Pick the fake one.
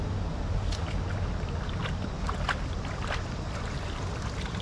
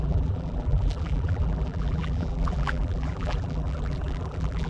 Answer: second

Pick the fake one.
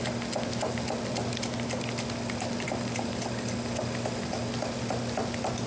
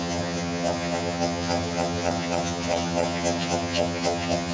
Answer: second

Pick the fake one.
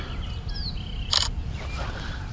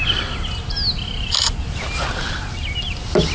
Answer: first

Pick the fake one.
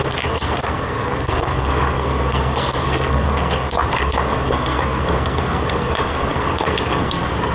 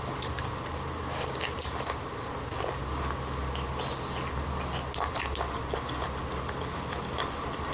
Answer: first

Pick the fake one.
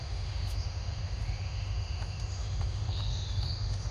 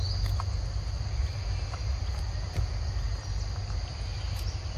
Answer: first